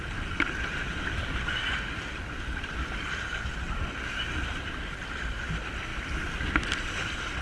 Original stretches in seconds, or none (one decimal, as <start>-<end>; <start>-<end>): 0.0-7.4

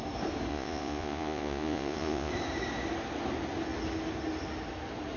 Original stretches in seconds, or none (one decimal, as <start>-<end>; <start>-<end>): 0.0-0.5; 2.3-5.2

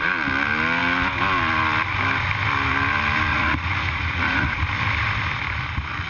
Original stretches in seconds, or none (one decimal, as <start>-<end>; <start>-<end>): 0.0-3.3; 4.6-6.1

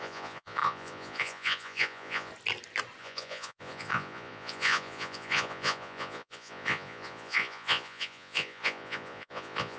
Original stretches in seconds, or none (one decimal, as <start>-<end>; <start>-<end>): 2.3-3.0

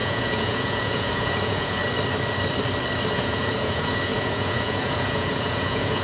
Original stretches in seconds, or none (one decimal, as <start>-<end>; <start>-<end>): 1.8-3.1